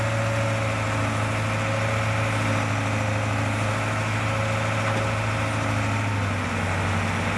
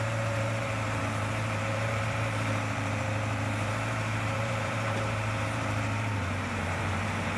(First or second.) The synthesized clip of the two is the second